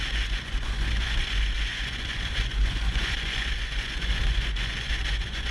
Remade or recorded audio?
remade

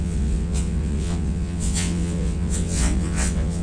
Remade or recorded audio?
remade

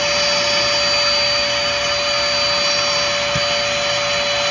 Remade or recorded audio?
recorded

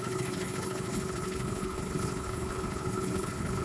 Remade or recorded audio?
remade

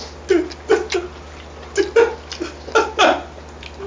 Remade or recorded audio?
recorded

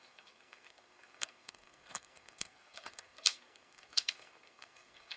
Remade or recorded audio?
remade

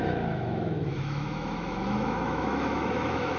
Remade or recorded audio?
remade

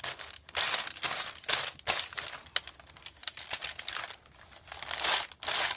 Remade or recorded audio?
recorded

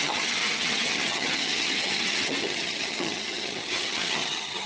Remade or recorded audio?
remade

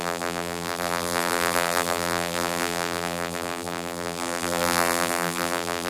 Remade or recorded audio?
remade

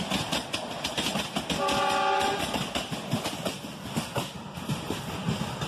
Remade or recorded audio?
recorded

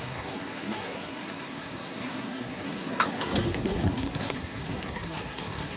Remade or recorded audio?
remade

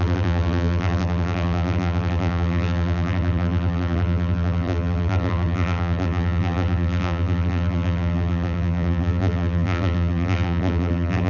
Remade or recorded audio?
remade